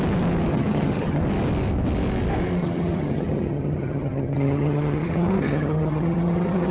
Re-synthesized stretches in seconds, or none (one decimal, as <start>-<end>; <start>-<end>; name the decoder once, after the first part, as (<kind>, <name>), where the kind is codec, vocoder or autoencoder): 0.5-1.2 (vocoder, HiFi-GAN); 2.6-6.7